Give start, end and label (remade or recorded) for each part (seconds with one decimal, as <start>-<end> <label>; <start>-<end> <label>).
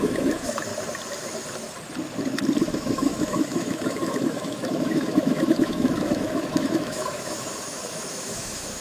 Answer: 0.0-0.7 remade; 0.7-2.6 recorded; 2.6-8.8 remade